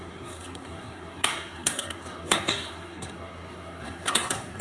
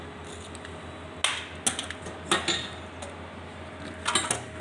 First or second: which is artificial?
first